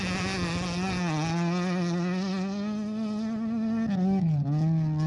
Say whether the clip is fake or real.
real